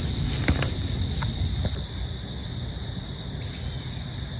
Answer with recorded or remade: recorded